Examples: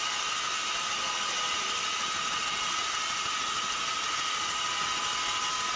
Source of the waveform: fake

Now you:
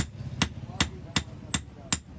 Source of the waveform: real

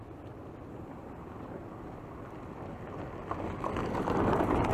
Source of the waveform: fake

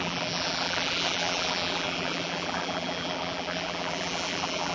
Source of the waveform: fake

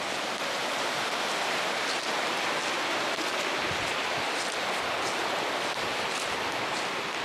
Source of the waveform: real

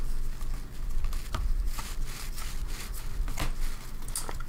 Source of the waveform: real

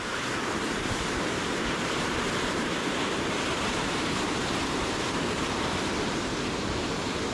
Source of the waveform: fake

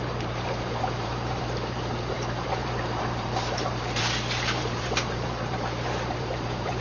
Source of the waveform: fake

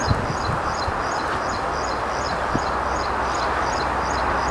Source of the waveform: real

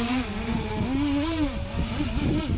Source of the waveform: real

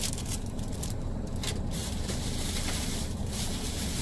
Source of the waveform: fake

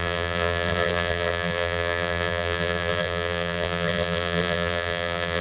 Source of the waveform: fake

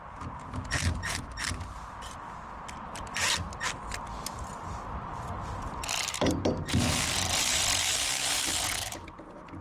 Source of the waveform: real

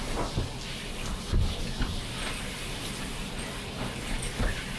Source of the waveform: fake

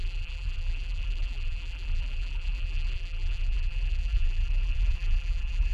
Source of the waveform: fake